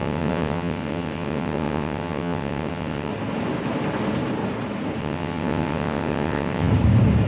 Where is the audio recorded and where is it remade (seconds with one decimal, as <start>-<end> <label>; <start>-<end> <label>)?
0.0-3.1 remade; 3.1-5.0 recorded; 5.0-6.7 remade; 6.7-7.3 recorded